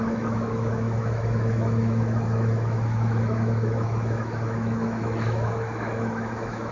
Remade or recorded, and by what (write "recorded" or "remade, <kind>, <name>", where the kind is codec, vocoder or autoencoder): remade, autoencoder, DAC-VAE